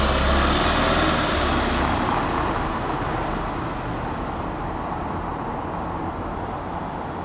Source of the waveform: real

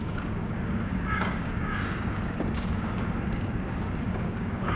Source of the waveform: fake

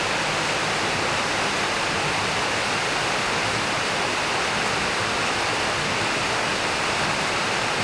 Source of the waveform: real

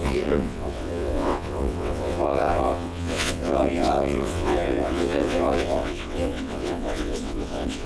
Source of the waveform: fake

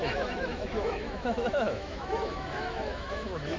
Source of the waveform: fake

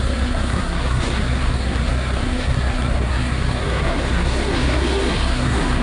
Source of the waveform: fake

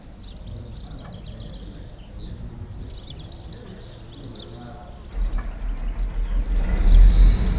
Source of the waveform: real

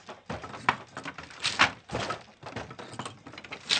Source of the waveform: real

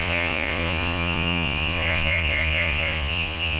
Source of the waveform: fake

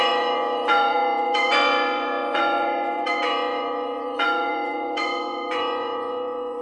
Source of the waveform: fake